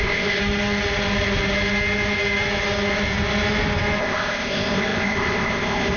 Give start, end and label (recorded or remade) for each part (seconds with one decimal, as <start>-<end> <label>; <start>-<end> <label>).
0.0-0.4 remade; 0.4-4.0 recorded; 4.0-6.0 remade